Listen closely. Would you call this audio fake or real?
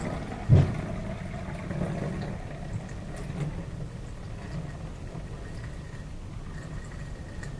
real